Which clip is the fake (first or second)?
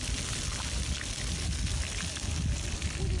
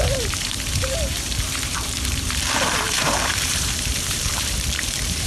second